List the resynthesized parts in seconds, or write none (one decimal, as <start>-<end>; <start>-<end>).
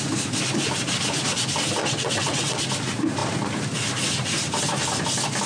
1.8-2.6